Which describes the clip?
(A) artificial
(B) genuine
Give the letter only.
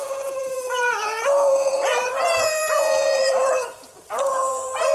A